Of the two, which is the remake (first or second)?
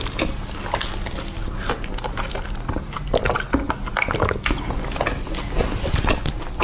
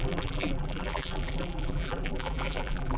second